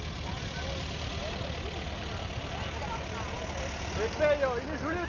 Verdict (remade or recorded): recorded